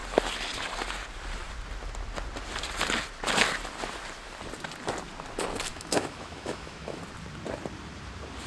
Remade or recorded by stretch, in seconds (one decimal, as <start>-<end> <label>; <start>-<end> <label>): 0.0-5.7 recorded; 5.7-7.0 remade; 7.0-8.5 recorded